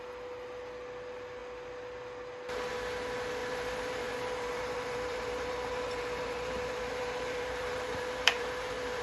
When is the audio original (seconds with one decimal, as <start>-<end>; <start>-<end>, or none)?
0.0-3.4